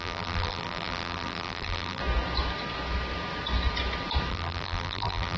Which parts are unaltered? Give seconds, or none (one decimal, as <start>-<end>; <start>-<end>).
2.0-4.3

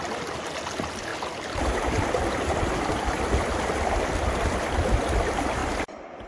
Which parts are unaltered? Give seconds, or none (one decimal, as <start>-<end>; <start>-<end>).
0.0-6.3